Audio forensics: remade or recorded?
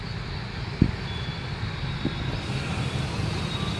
recorded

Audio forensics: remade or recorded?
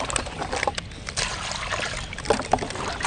recorded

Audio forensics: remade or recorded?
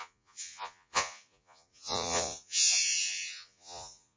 remade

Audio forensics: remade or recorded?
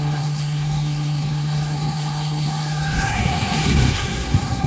remade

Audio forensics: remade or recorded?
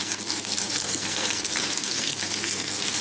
remade